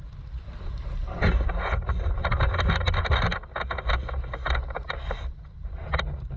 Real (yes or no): yes